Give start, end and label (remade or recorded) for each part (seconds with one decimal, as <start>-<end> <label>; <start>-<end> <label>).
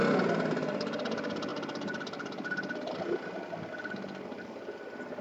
0.0-5.2 recorded